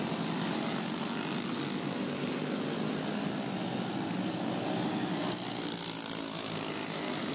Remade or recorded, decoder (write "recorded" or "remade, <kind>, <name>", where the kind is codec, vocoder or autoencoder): recorded